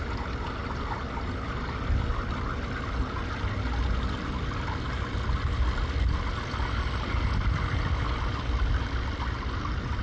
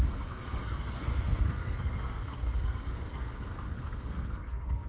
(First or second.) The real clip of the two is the first